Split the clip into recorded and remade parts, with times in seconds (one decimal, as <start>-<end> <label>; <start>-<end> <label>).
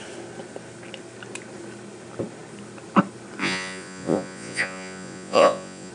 0.0-3.4 recorded; 3.4-5.9 remade